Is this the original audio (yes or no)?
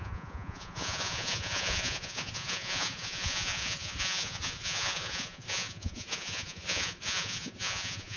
no